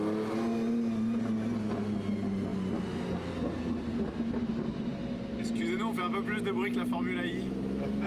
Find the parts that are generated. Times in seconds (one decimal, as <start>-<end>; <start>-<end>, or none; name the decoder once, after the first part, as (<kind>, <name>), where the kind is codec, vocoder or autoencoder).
none